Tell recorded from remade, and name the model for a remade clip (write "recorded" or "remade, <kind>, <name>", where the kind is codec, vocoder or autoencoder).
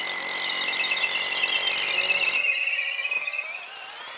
recorded